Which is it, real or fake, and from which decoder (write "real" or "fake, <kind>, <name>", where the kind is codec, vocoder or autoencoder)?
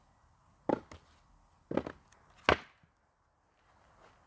real